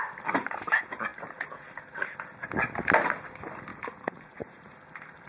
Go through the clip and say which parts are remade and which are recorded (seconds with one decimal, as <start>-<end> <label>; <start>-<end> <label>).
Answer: 0.0-3.7 recorded; 3.7-4.8 remade; 4.8-5.3 recorded